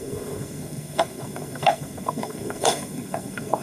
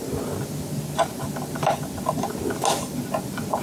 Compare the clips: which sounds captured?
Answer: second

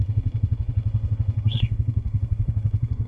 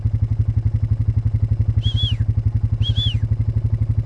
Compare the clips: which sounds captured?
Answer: second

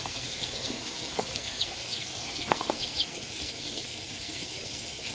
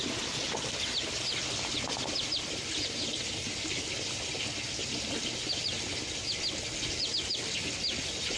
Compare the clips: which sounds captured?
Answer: second